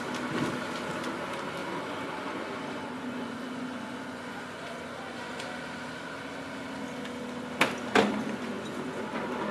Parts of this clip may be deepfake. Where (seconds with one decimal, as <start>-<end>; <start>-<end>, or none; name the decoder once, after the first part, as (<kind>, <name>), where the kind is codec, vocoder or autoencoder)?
1.6-5.4 (vocoder, Vocos); 8.2-9.1